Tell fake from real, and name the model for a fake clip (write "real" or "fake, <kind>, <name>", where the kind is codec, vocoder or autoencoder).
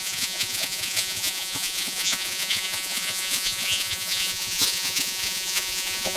fake, vocoder, Vocos